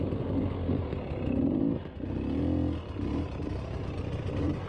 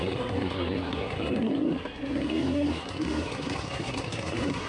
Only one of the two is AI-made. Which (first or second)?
second